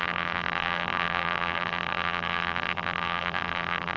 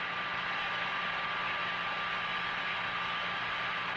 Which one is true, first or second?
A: second